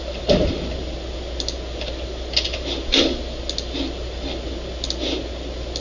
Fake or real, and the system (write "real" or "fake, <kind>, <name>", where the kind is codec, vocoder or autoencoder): real